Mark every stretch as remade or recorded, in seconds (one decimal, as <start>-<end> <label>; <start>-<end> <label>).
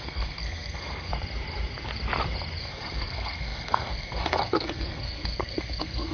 0.0-1.1 remade; 1.1-2.6 recorded; 2.6-6.1 remade